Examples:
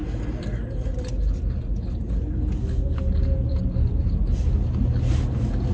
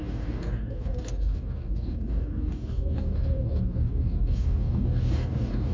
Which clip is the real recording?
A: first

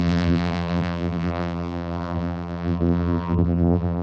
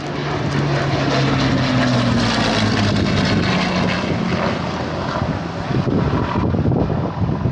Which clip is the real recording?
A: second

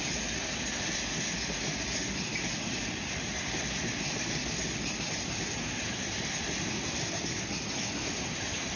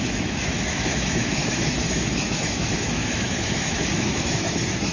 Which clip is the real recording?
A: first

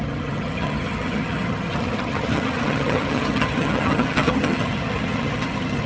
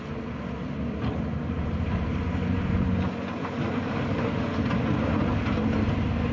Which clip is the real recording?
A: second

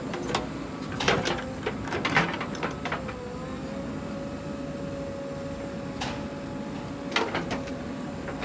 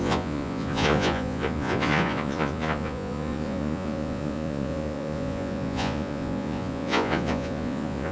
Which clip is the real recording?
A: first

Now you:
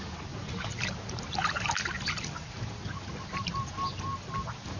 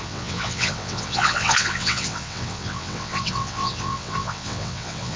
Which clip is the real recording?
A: first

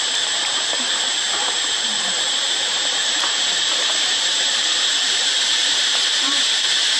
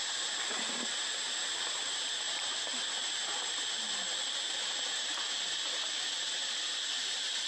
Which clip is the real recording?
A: second